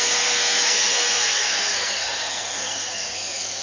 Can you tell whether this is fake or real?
fake